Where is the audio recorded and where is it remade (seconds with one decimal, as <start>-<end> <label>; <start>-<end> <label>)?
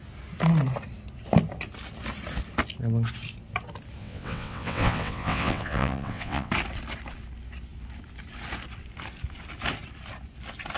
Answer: 0.0-4.0 recorded; 4.0-6.5 remade; 6.5-10.8 recorded